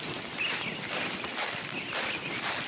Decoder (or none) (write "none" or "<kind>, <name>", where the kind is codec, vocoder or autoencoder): none